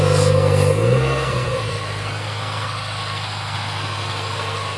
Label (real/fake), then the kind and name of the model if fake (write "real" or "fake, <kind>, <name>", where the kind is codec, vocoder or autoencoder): fake, codec, SNAC